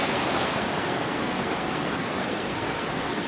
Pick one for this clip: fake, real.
fake